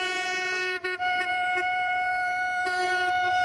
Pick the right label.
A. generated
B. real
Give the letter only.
A